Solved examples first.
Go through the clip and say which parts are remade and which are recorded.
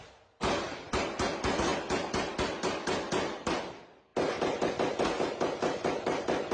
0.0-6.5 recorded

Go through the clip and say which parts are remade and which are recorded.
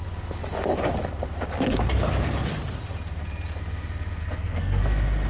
0.0-4.2 recorded; 4.2-4.8 remade; 4.8-5.3 recorded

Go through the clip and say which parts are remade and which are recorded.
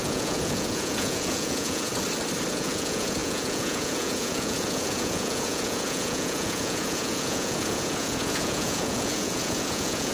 0.0-1.9 remade; 1.9-2.5 recorded; 2.5-10.1 remade